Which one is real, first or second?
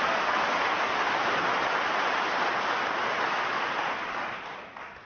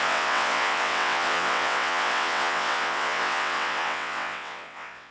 first